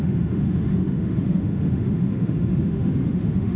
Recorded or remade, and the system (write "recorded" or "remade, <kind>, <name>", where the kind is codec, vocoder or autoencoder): remade, autoencoder, DAC-VAE